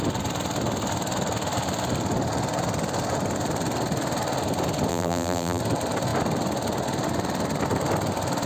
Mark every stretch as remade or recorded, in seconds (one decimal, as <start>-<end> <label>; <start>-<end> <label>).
0.0-4.9 recorded; 4.9-5.6 remade; 5.6-8.5 recorded